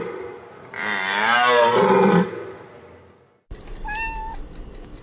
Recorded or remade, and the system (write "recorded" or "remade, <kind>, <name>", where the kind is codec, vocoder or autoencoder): recorded